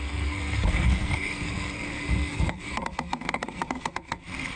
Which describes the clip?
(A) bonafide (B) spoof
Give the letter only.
B